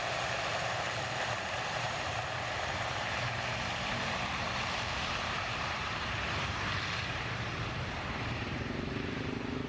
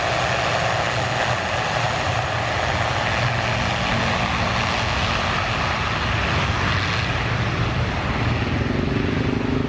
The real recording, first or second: second